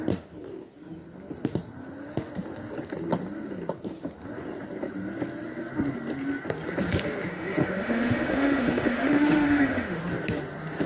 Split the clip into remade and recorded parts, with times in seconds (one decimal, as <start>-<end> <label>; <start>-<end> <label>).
0.0-7.3 recorded; 7.3-10.0 remade; 10.0-10.9 recorded